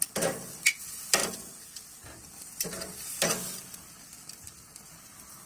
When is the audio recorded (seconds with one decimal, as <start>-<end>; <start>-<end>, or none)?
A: 0.0-5.5

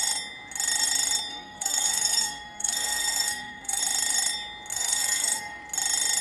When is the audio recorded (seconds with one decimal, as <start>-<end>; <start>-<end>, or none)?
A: 0.0-1.3; 3.8-4.7; 5.6-6.2

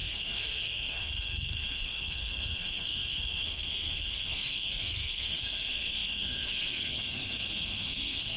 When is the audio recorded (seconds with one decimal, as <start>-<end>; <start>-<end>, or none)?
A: none

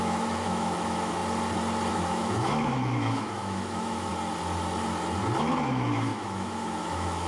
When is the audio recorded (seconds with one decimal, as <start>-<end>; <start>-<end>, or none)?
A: 1.2-1.9; 4.1-5.4

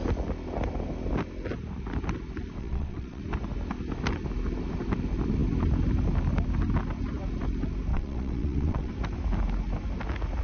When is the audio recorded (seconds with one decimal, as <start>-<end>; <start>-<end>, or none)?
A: 0.0-2.6; 3.2-7.9; 8.9-10.4

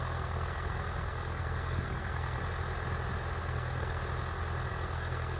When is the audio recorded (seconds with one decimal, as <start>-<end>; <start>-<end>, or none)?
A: 2.4-3.4; 4.0-4.7

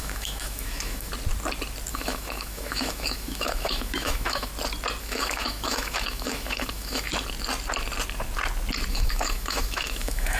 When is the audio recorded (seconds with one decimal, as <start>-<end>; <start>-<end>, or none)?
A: 1.1-1.9; 4.5-5.0; 7.1-8.9

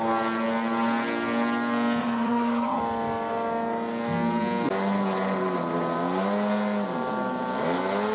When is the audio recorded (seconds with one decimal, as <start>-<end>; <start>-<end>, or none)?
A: 0.0-2.0; 2.8-8.1